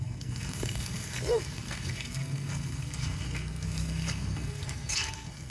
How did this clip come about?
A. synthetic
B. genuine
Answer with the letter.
A